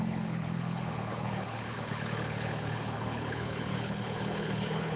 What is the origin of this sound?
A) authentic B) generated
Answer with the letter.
B